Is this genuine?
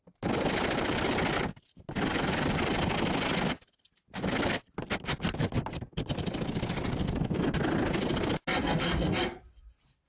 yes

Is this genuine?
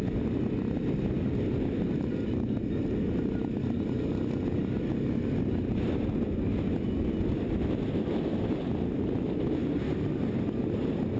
yes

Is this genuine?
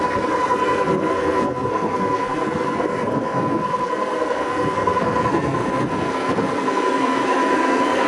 no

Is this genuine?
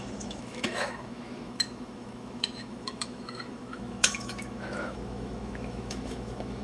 no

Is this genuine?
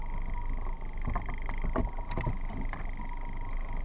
yes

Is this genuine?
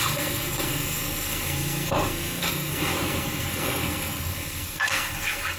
no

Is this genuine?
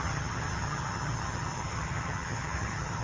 no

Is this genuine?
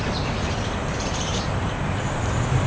no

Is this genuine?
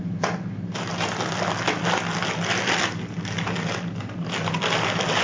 yes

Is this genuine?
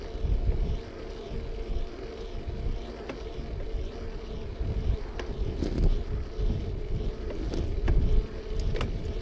yes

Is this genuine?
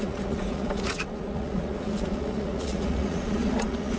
no